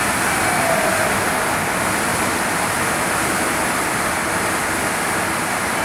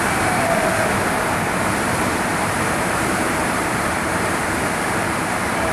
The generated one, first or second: second